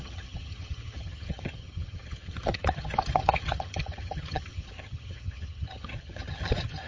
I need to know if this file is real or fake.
fake